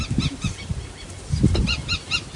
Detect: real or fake real